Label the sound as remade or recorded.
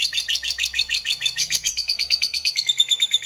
remade